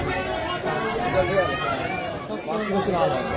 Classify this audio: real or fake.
real